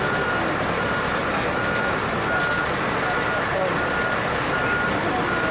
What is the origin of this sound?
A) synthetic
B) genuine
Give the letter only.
B